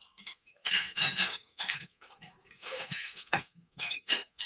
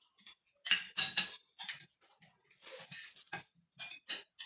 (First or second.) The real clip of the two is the second